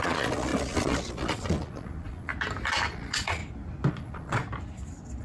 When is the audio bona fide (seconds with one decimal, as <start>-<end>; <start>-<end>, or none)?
2.3-2.9; 3.4-3.9; 4.4-5.2